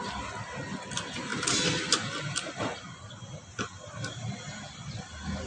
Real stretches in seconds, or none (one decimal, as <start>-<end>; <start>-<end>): 0.0-5.5